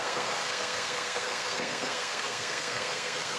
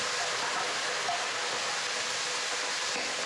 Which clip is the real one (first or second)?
second